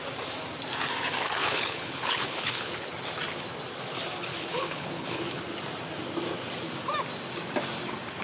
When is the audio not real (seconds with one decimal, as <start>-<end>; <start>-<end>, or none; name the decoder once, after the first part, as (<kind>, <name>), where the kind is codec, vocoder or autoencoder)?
1.4-2.9 (codec, HILCodec); 4.3-5.4